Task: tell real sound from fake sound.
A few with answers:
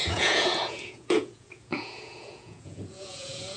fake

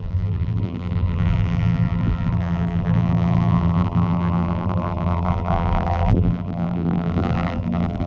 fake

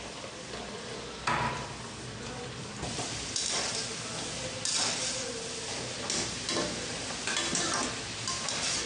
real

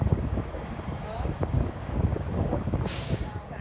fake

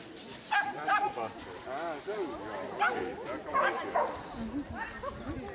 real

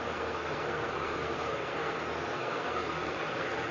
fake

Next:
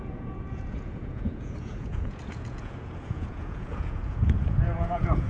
fake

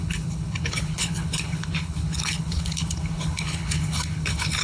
fake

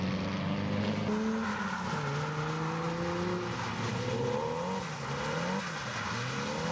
real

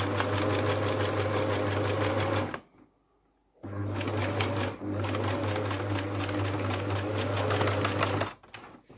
real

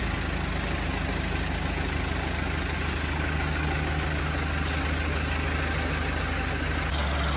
real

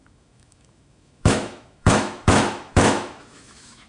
fake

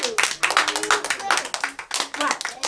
real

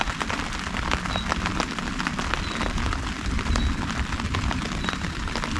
real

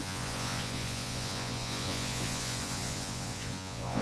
fake